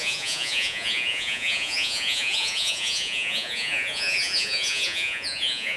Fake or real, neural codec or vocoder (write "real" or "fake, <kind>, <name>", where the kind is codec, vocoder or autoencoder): fake, vocoder, Vocos